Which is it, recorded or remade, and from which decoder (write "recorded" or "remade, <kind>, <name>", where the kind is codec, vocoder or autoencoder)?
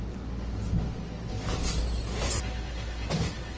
recorded